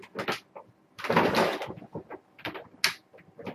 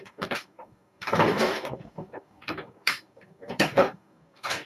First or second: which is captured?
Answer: first